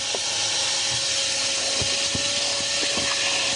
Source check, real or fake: real